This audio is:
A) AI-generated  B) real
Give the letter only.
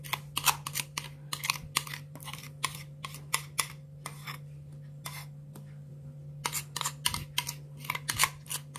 B